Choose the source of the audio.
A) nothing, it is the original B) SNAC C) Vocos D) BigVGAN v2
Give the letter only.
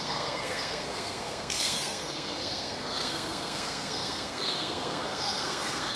B